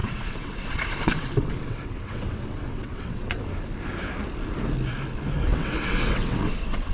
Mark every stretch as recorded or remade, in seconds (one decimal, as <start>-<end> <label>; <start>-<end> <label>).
0.0-3.4 remade; 3.4-5.5 recorded; 5.5-6.9 remade